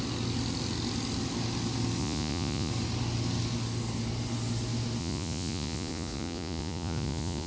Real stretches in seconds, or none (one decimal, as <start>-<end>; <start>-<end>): 0.0-2.0; 2.7-5.0